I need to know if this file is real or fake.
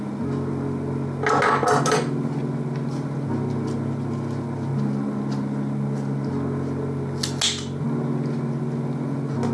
real